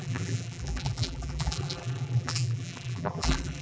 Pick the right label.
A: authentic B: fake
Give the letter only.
B